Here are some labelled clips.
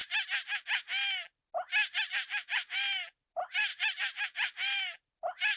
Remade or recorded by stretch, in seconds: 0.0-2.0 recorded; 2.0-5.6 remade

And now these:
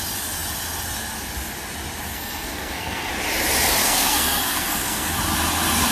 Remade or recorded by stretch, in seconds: 0.0-2.1 recorded; 2.1-3.1 remade; 3.1-3.8 recorded; 3.8-5.1 remade; 5.1-5.9 recorded

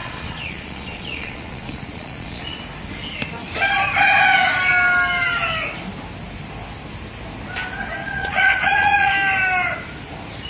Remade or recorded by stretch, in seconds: 0.0-2.6 remade; 2.6-8.0 recorded; 8.0-9.1 remade; 9.1-10.5 recorded